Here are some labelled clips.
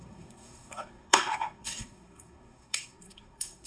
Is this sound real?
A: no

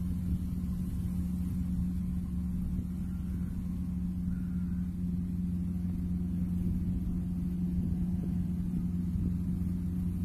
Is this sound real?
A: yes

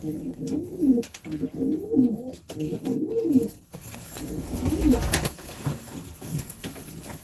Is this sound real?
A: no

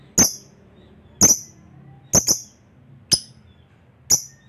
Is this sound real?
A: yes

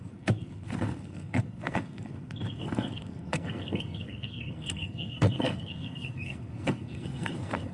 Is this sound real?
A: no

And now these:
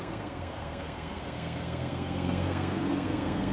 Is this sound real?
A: no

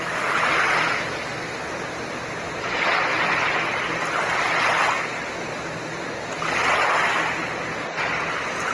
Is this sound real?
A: yes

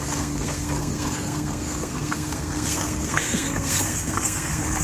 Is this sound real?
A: no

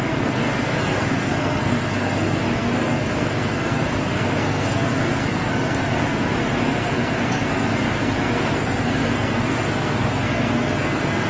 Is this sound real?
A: no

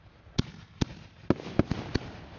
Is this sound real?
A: yes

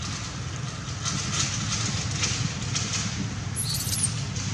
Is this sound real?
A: yes